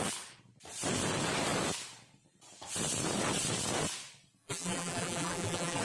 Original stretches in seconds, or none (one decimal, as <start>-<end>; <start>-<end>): 0.0-4.4